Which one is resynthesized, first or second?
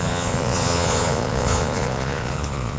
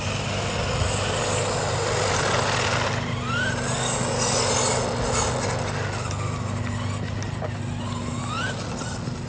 first